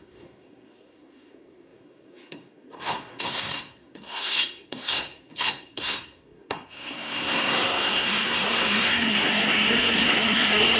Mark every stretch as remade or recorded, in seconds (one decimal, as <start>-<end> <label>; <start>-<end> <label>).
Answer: 0.0-10.8 remade